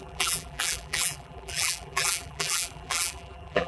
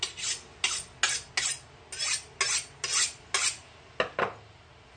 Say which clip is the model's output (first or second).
first